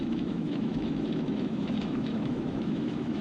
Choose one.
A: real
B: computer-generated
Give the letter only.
B